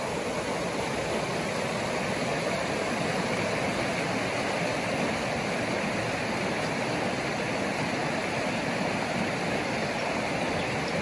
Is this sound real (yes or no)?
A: yes